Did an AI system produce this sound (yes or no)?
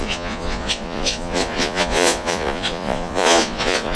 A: yes